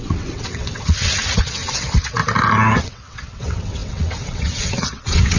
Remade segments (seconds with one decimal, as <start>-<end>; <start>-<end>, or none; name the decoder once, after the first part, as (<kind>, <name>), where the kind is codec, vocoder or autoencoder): 0.0-2.2 (vocoder, WaveNeXt); 2.8-5.4